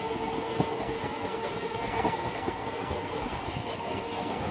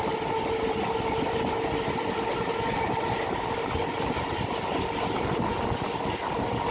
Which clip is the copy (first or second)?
first